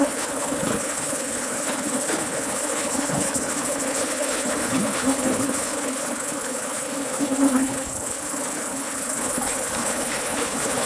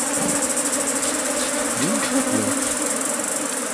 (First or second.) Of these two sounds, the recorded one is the second